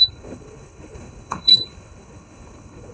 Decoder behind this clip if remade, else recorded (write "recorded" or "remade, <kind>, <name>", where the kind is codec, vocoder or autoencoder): remade, codec, HILCodec